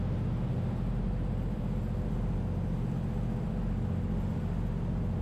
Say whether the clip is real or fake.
real